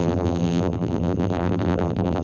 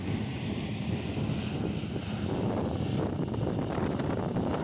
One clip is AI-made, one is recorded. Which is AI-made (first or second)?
first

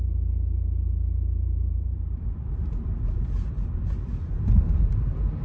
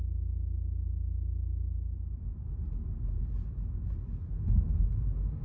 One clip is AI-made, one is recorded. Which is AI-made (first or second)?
first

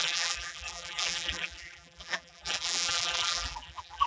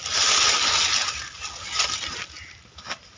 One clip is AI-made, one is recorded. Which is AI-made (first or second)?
first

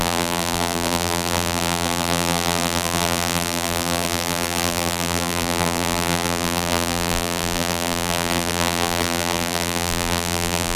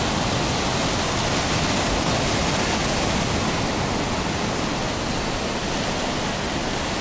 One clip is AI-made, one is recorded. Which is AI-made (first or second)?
first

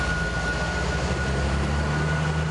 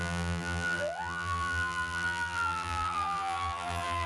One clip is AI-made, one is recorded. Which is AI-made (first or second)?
second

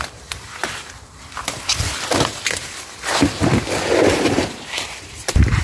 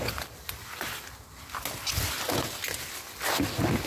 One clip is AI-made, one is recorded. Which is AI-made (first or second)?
first